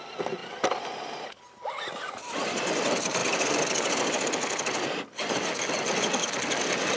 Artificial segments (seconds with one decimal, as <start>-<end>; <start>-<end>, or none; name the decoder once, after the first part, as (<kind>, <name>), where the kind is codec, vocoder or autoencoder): none